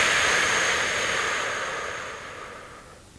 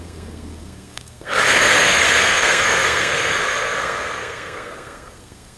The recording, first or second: first